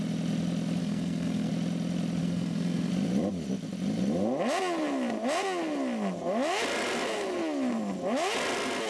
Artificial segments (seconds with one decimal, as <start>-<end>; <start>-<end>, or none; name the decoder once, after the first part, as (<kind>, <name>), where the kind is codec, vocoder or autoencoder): 0.8-1.5 (codec, SNAC); 2.2-2.9